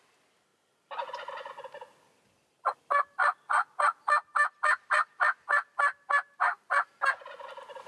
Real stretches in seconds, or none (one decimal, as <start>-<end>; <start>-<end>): 0.0-7.9